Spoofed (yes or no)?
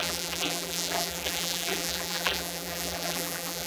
yes